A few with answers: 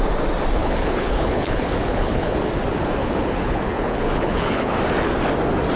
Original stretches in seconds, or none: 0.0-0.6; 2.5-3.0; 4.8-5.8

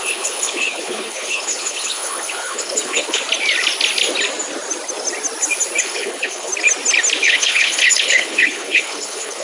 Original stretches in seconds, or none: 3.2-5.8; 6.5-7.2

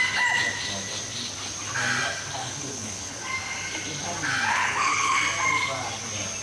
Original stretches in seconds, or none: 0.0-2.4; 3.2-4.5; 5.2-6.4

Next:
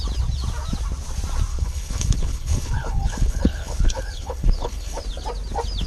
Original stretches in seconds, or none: 0.0-1.5; 5.0-5.9